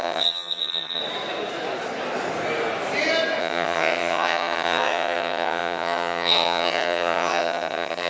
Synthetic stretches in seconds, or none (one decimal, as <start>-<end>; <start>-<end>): 0.0-1.0; 3.4-8.1